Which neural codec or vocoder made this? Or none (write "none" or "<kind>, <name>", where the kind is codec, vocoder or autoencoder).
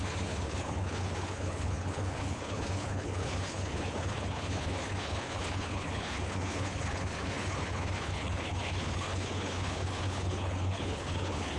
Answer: codec, HILCodec